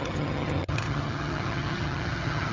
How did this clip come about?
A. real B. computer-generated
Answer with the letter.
B